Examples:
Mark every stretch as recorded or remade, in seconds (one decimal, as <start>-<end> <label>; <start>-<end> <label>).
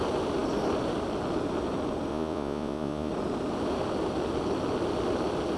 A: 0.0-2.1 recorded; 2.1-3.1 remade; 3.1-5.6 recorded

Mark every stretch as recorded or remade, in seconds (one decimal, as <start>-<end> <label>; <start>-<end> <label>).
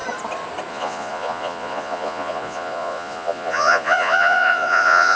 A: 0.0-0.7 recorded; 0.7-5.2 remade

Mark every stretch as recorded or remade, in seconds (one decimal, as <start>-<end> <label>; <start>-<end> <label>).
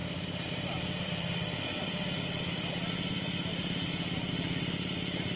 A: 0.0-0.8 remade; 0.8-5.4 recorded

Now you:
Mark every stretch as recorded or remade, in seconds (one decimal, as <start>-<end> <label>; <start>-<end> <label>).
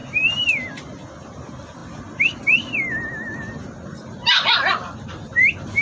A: 0.0-5.8 recorded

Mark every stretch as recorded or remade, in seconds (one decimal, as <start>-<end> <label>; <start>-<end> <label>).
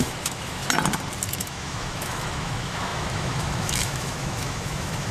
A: 0.0-0.6 remade; 0.6-1.4 recorded; 1.4-5.1 remade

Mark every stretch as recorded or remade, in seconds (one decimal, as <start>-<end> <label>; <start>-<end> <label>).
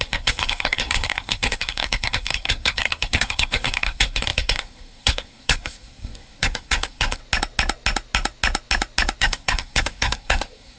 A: 0.0-7.2 remade; 7.2-9.2 recorded; 9.2-10.8 remade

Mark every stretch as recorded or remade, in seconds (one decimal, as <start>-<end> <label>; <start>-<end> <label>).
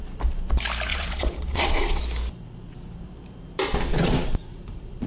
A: 0.0-0.9 recorded; 0.9-2.0 remade; 2.0-3.9 recorded; 3.9-5.1 remade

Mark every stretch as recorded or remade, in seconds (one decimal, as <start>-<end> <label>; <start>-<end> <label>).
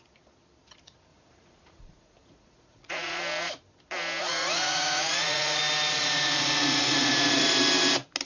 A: 0.0-1.1 recorded; 1.1-3.2 remade; 3.2-4.2 recorded; 4.2-5.6 remade; 5.6-6.0 recorded; 6.0-7.5 remade; 7.5-8.3 recorded